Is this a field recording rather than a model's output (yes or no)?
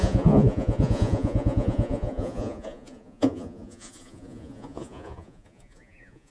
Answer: no